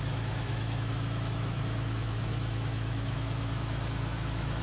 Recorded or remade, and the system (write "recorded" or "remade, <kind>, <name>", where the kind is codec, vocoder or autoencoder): remade, autoencoder, DAC-VAE